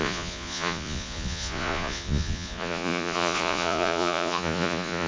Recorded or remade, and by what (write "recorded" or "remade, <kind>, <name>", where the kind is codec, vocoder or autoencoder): remade, vocoder, Vocos